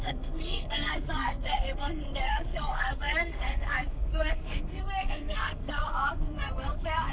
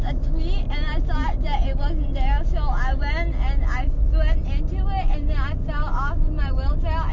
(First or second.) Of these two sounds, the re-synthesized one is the first